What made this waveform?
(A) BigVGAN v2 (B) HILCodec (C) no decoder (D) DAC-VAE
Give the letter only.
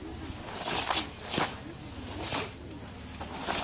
C